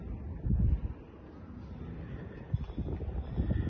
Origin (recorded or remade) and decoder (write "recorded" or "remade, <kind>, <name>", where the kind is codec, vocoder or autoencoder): recorded